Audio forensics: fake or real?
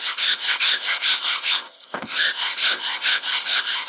fake